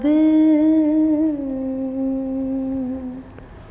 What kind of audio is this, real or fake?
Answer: real